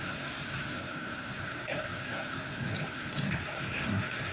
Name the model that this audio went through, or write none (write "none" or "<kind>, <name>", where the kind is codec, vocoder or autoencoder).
codec, SNAC